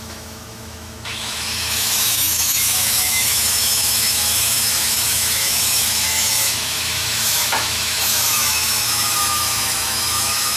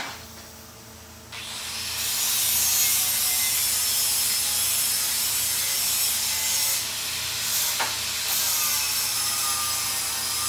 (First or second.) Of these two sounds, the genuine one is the second